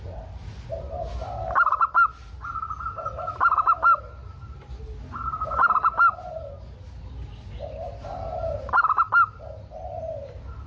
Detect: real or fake real